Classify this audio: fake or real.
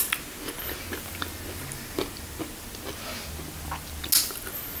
real